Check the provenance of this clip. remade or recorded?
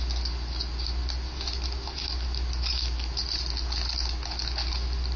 recorded